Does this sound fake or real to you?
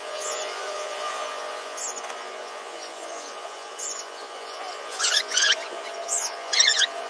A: fake